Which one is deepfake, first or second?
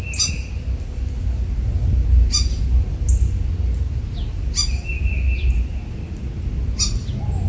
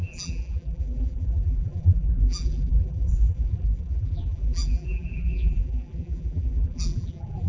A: second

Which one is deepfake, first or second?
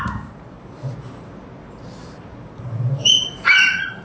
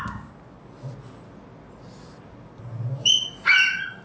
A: first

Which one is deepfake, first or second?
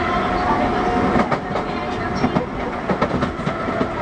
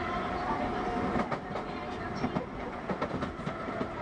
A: second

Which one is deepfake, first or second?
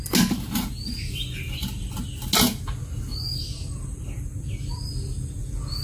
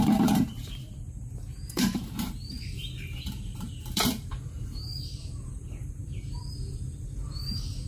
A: second